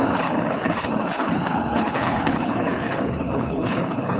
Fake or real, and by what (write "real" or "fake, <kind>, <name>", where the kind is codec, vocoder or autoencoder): fake, codec, HILCodec